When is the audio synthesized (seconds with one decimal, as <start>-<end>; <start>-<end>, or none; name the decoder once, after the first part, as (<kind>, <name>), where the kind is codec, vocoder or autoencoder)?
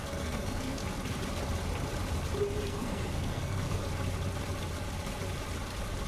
0.0-0.8 (codec, SNAC); 2.7-3.8